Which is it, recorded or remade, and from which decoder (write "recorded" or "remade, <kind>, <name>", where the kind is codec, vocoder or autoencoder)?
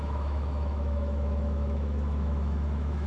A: remade, autoencoder, DAC-VAE